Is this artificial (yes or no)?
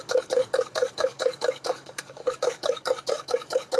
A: yes